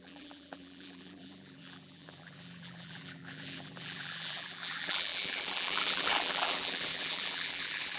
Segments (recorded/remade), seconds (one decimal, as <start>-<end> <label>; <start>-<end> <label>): 0.0-8.0 remade